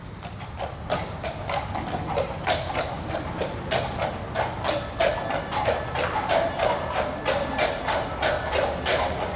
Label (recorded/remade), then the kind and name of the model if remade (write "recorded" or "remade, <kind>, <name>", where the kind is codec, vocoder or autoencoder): recorded